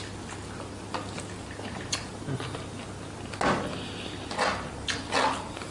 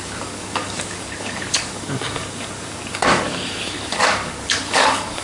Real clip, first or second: first